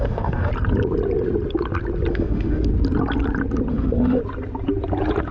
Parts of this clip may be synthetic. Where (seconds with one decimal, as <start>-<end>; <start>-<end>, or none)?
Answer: 0.0-0.5; 2.1-2.7; 3.7-4.2